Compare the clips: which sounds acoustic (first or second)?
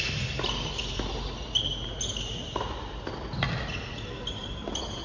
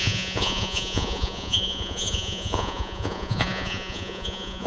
first